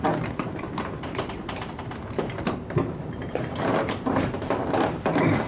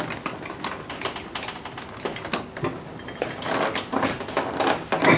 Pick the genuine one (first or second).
second